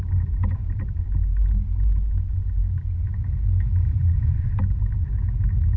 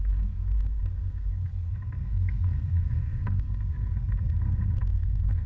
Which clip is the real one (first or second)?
first